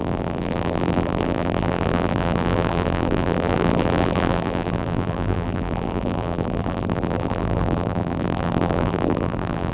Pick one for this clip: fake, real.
fake